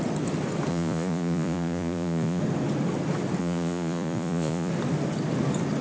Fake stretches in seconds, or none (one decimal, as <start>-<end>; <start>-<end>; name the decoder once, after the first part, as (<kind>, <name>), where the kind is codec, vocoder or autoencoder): 0.7-2.4 (vocoder, Vocos); 3.4-4.7